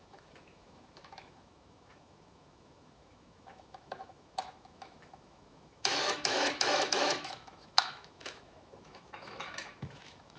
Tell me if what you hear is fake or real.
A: fake